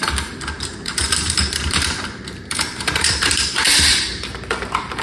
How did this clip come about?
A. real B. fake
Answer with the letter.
B